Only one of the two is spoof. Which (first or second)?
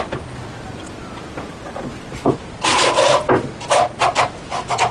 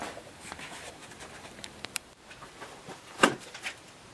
second